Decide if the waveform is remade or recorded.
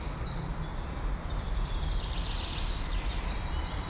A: recorded